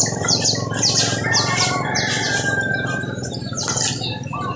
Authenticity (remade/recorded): recorded